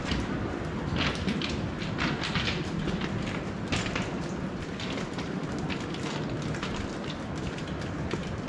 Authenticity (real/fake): real